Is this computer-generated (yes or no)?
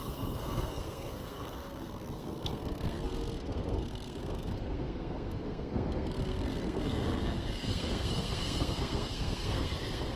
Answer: yes